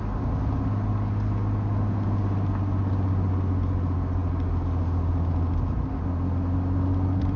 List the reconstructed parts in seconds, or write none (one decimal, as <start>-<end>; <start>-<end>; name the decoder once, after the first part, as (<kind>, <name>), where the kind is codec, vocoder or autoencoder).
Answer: none